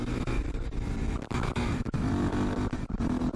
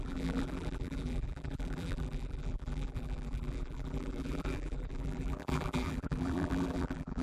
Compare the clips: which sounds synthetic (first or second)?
second